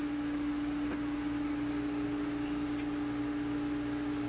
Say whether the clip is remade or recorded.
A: recorded